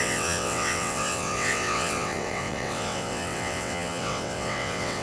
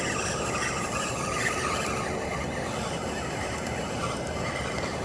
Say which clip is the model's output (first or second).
first